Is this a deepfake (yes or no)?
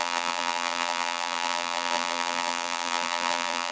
yes